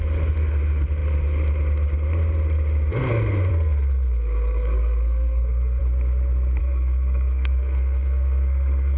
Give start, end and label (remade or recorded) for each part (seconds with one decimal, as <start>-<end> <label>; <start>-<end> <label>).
0.0-3.5 recorded; 3.5-5.8 remade; 5.8-6.6 recorded; 6.6-9.0 remade